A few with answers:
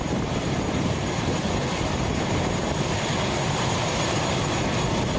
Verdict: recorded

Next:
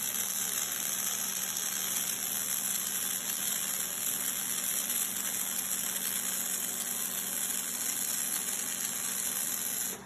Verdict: recorded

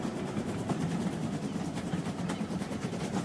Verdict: remade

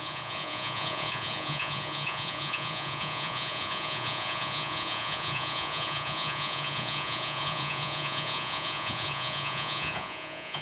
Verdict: remade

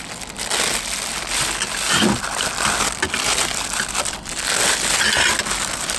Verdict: recorded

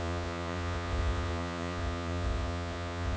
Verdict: remade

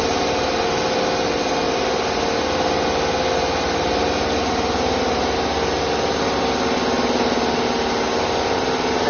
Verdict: recorded